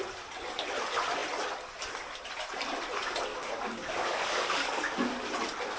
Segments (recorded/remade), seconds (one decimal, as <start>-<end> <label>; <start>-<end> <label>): 0.0-3.3 recorded; 3.3-5.3 remade; 5.3-5.8 recorded